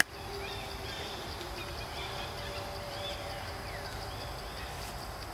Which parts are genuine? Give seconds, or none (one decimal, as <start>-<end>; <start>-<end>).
0.0-5.3